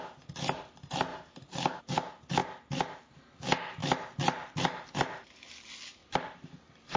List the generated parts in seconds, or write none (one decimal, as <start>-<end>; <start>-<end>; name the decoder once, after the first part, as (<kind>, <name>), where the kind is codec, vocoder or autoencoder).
1.1-1.8 (vocoder, BigVGAN v2); 6.0-6.6